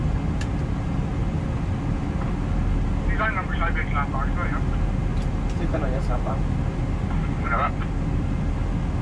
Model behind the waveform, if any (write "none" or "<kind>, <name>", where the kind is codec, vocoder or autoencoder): none